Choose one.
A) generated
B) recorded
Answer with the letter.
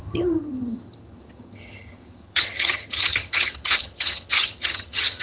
A